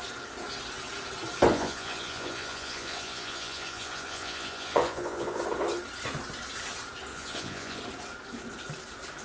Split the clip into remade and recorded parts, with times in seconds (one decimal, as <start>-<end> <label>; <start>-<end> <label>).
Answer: 0.0-1.5 recorded; 1.5-5.4 remade; 5.4-7.1 recorded; 7.1-7.8 remade; 7.8-9.2 recorded